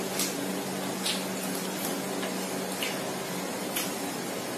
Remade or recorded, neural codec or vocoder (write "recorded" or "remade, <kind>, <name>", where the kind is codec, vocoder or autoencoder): recorded